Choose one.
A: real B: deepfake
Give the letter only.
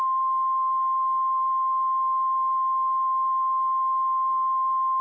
A